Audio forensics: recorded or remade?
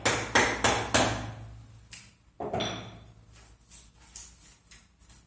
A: recorded